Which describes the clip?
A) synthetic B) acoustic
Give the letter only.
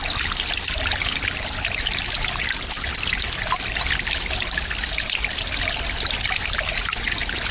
B